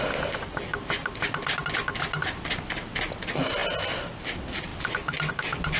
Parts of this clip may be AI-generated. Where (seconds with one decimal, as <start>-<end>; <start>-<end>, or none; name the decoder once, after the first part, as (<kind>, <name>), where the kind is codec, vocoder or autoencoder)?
none